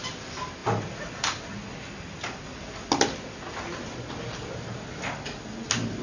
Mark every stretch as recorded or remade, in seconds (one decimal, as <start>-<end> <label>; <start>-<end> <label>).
0.0-0.6 recorded; 0.6-4.2 remade; 4.2-6.0 recorded